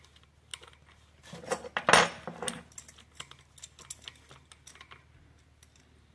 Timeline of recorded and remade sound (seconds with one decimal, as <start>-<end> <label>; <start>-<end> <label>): 0.0-6.1 recorded